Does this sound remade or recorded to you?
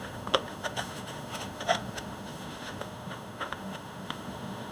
remade